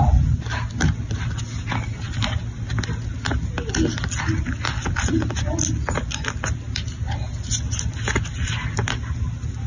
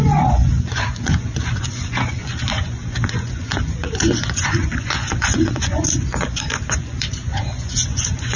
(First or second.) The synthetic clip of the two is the second